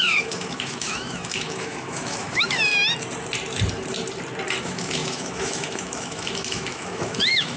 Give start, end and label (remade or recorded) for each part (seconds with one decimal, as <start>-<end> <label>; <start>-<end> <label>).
0.0-2.7 remade; 2.7-4.6 recorded; 4.6-7.6 remade